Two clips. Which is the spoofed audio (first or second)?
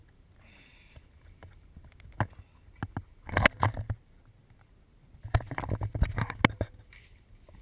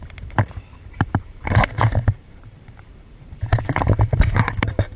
second